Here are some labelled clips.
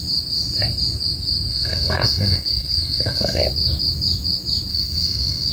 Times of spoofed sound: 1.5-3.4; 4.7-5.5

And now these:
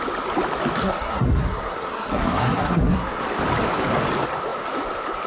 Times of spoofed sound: 0.8-3.2

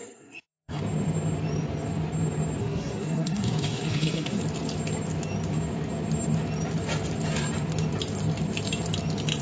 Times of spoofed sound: 0.0-0.8; 2.6-4.4